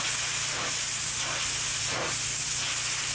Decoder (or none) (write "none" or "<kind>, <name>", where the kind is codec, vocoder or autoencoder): none